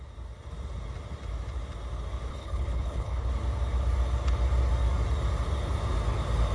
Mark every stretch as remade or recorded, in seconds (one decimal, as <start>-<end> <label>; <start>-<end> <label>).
0.0-2.3 recorded; 2.3-3.3 remade; 3.3-6.5 recorded